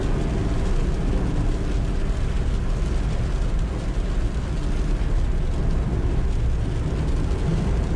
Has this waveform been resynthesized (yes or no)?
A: no